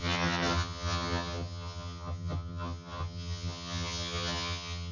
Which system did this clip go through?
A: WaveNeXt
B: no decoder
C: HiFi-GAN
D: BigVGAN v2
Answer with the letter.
C